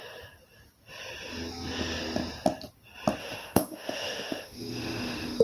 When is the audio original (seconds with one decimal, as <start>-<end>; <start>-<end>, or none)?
0.0-3.2